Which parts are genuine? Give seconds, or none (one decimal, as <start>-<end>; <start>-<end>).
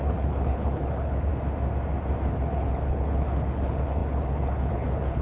1.3-2.3